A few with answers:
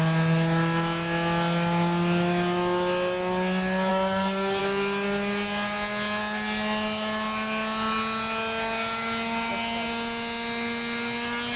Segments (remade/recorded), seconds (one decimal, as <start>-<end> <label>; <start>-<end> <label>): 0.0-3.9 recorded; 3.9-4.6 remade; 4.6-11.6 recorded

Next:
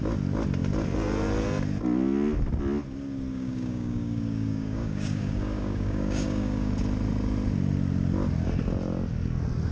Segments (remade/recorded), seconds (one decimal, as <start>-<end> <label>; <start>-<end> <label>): 0.0-3.3 recorded; 3.3-6.7 remade; 6.7-9.7 recorded

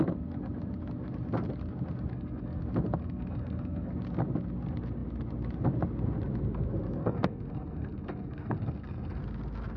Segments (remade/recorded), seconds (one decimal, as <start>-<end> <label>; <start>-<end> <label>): 0.0-2.1 recorded; 2.1-2.6 remade; 2.6-3.0 recorded; 3.0-3.9 remade; 3.9-7.0 recorded; 7.0-9.2 remade; 9.2-9.8 recorded

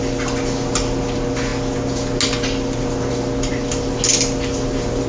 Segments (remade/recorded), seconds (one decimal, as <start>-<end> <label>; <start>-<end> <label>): 0.0-5.1 recorded